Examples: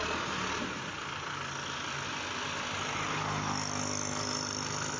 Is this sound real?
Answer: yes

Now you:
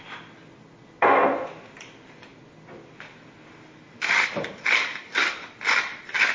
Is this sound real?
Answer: yes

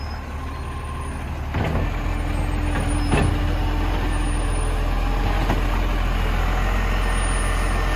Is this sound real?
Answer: yes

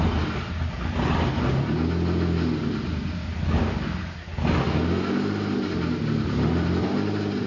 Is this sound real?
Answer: yes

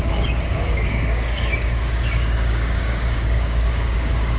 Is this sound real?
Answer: no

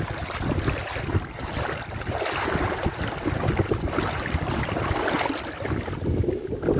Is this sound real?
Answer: yes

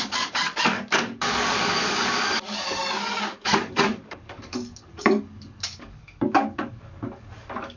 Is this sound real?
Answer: no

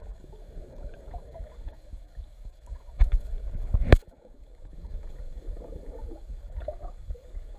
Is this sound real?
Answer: no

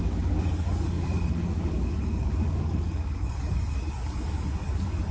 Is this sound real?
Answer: no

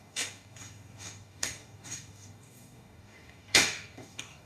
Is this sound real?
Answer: no